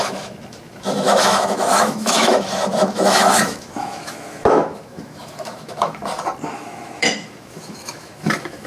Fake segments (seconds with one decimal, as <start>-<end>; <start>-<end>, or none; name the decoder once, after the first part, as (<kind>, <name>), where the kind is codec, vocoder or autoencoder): 0.0-6.0 (autoencoder, DAC-VAE); 6.5-8.7

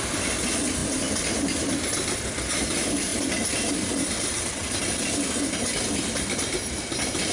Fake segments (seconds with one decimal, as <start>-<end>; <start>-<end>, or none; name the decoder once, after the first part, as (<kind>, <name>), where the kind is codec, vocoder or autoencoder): none

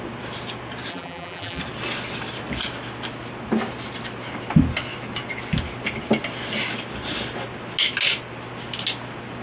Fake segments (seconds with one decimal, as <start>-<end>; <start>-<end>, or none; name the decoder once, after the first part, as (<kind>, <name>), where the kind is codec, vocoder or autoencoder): 0.9-1.6 (vocoder, BigVGAN v2)

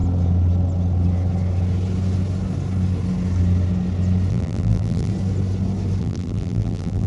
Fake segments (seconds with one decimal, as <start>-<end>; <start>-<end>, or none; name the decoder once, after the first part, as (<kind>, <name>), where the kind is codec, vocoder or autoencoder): 4.3-5.1 (vocoder, BigVGAN v2); 6.0-7.1

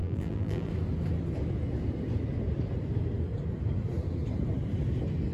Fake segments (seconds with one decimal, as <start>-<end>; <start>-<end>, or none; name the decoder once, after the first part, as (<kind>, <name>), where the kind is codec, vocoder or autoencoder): 0.0-0.7 (vocoder, BigVGAN v2)

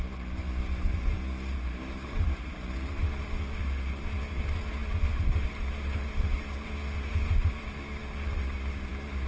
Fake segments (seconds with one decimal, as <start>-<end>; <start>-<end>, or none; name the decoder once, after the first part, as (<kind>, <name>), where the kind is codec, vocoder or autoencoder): none

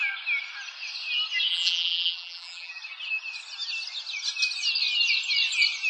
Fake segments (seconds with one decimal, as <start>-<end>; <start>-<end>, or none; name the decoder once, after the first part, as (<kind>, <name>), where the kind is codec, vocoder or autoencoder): 1.5-2.8 (vocoder, BigVGAN v2)

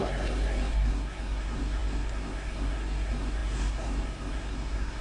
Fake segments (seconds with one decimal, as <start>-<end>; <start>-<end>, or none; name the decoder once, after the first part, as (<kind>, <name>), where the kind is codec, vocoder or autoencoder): 0.0-5.0 (codec, SNAC)